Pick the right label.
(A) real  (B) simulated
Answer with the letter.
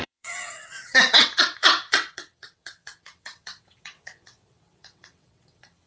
B